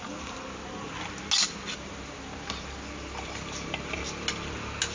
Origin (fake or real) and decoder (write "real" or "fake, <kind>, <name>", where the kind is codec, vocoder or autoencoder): real